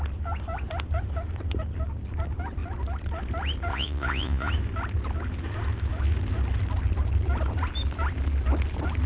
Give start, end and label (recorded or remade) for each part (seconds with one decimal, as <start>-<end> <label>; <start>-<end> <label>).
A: 0.0-3.7 recorded; 3.7-4.5 remade; 4.5-9.1 recorded